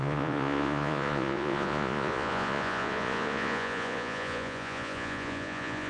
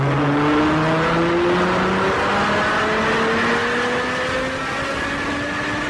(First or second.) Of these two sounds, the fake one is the first